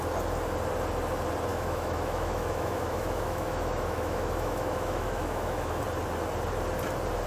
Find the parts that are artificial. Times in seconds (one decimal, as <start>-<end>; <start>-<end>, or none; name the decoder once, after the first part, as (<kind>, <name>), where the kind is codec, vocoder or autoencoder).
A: 1.5-5.8 (autoencoder, DAC-VAE)